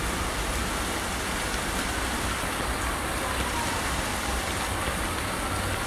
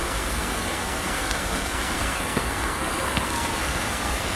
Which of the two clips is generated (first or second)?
second